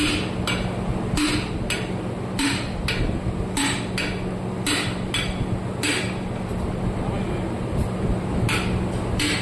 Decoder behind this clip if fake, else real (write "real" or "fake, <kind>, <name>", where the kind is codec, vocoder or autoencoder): real